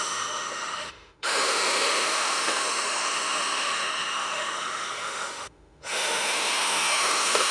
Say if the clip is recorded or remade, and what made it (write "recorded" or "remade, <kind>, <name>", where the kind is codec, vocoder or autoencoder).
remade, autoencoder, DAC-VAE